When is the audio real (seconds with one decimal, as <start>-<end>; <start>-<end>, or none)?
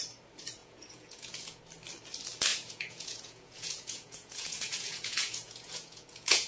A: 0.0-0.6; 1.6-2.5